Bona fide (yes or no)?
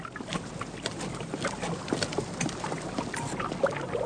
yes